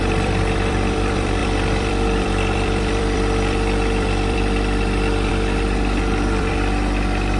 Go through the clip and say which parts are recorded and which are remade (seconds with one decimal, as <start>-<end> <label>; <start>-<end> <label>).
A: 0.0-7.4 remade